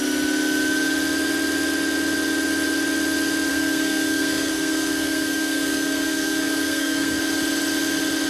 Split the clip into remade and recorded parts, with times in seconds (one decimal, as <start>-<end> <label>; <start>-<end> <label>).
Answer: 0.0-3.5 recorded; 3.5-7.2 remade; 7.2-8.3 recorded